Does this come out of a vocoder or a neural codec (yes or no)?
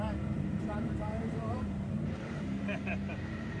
yes